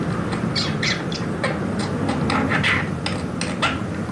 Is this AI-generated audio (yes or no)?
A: no